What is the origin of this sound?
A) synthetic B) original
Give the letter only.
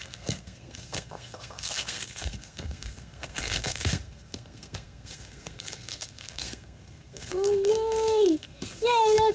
A